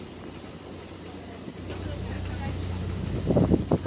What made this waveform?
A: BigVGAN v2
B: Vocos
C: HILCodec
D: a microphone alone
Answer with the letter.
D